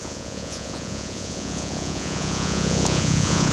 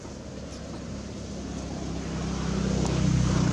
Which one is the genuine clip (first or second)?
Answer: second